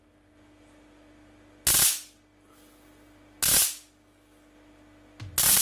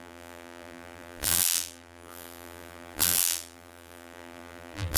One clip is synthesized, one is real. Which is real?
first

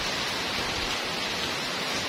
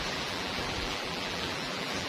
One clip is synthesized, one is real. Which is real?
first